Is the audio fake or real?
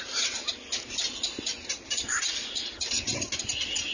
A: real